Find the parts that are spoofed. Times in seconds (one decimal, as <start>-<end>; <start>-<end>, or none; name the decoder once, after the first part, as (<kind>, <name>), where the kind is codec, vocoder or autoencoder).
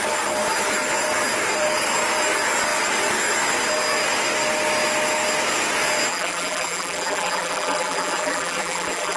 6.1-9.2 (vocoder, BigVGAN v2)